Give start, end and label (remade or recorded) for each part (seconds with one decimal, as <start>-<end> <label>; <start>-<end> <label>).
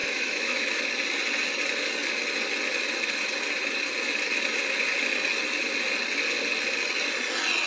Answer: 0.0-0.8 remade; 0.8-7.7 recorded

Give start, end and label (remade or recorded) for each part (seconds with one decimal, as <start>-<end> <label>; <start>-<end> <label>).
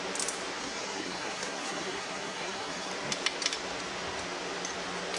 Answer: 0.0-0.6 recorded; 0.6-2.9 remade; 2.9-5.2 recorded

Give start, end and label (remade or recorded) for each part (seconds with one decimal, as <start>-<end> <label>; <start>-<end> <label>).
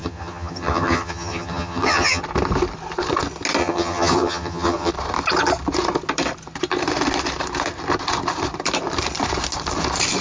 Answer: 0.0-2.2 remade; 2.2-3.6 recorded; 3.6-4.9 remade; 4.9-10.2 recorded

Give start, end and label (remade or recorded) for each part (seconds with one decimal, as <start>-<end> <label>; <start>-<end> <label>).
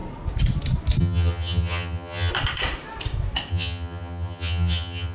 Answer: 0.0-1.0 recorded; 1.0-2.3 remade; 2.3-3.5 recorded; 3.5-5.1 remade